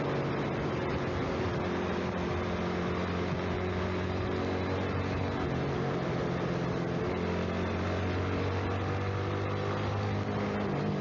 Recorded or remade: recorded